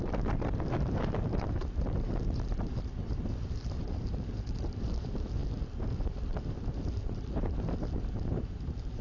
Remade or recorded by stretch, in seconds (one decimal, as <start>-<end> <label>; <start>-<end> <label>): 0.0-9.0 remade